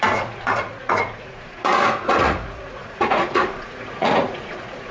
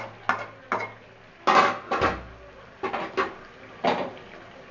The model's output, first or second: first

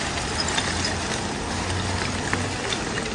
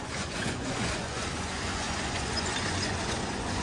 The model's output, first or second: second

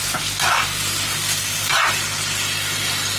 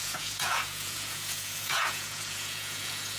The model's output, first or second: second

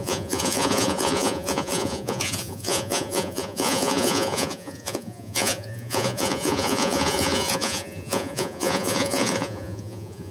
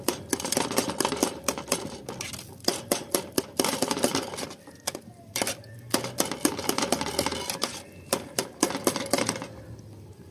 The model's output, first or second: first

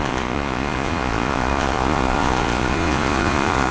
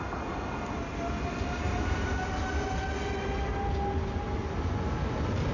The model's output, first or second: first